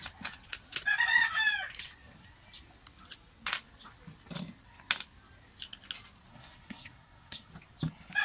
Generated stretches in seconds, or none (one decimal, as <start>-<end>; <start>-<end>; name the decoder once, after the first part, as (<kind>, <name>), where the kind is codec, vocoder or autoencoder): 6.3-7.5 (codec, SNAC)